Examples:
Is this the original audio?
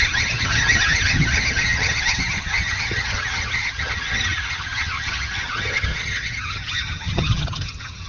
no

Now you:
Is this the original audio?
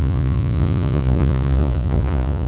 no